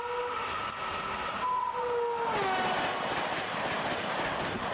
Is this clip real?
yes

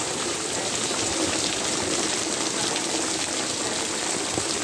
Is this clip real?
yes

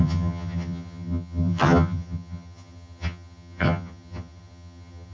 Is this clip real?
no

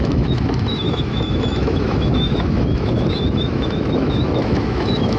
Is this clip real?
no